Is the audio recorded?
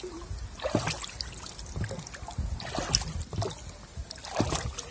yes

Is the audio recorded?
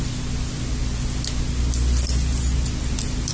yes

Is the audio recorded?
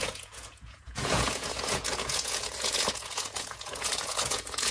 no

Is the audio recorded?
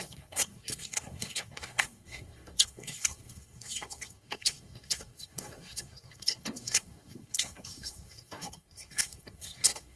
no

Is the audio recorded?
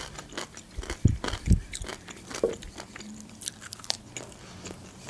yes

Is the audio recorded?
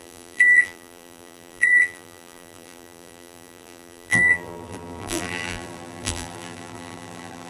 no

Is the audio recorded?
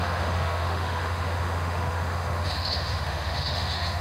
no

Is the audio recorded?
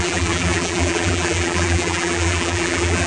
no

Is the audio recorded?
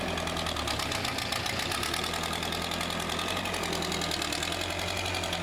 yes